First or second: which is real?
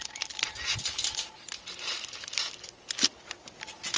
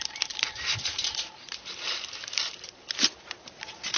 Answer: first